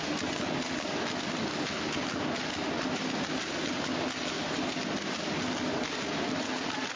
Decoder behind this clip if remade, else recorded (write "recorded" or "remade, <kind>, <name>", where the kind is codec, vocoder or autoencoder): recorded